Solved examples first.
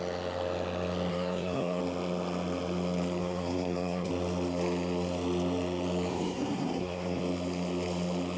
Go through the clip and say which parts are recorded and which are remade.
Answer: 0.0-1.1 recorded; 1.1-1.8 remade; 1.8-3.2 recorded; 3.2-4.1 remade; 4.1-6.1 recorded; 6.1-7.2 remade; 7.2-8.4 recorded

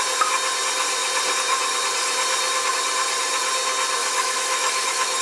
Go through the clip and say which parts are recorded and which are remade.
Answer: 0.0-4.0 recorded; 4.0-5.2 remade

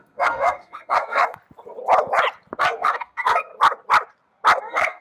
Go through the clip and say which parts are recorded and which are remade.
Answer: 0.0-1.4 remade; 1.4-2.6 recorded; 2.6-3.5 remade; 3.5-4.6 recorded; 4.6-5.0 remade

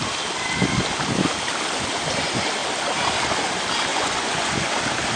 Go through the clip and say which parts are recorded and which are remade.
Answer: 0.0-3.9 recorded; 3.9-4.7 remade; 4.7-5.2 recorded

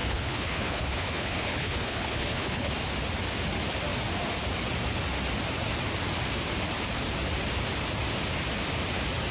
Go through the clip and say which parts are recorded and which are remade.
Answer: 0.0-2.7 remade; 2.7-9.3 recorded